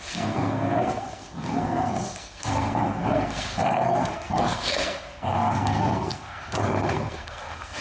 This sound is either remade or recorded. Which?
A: remade